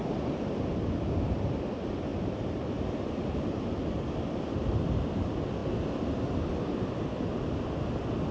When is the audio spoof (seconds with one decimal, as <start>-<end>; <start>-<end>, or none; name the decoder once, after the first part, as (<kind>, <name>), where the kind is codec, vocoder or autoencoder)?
0.0-0.5 (vocoder, BigVGAN v2); 2.1-3.3